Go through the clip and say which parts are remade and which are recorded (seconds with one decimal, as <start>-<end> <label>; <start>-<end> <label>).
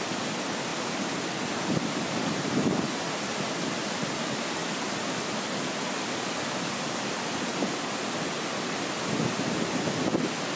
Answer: 0.0-10.6 recorded